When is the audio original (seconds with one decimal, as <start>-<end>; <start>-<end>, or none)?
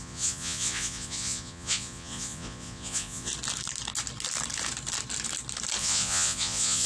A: 3.3-5.8